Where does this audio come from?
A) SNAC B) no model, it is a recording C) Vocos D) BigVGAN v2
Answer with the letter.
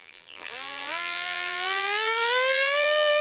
D